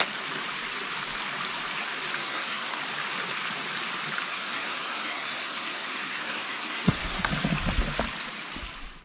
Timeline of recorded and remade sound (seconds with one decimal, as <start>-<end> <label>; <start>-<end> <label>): 0.0-2.2 recorded; 2.2-2.8 remade; 2.8-4.3 recorded; 4.3-7.3 remade; 7.3-9.0 recorded